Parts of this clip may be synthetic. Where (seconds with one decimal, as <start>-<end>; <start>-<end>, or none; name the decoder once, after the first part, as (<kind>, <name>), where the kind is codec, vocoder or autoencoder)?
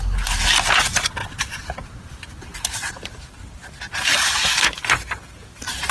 1.2-2.0 (vocoder, BigVGAN v2); 2.5-3.7